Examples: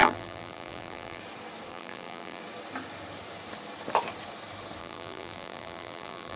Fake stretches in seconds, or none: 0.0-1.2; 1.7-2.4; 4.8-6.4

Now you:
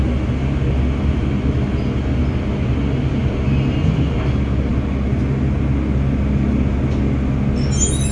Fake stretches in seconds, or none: none